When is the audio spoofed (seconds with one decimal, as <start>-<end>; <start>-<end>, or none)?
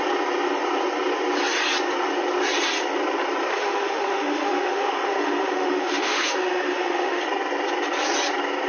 3.5-7.2